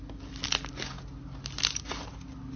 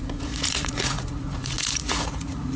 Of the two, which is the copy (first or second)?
second